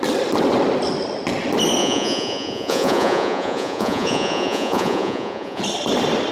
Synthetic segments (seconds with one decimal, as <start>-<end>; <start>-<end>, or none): 1.8-5.6